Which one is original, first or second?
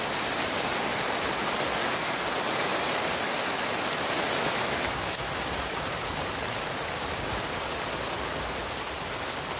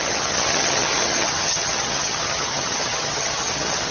first